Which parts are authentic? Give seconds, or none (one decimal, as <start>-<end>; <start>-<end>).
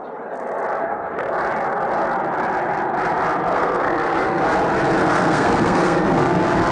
0.0-0.8; 1.3-3.5; 4.4-5.0